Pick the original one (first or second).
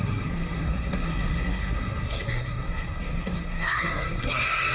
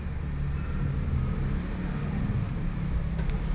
second